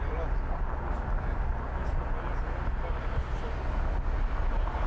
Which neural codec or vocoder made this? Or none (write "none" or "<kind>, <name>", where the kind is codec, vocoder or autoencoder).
none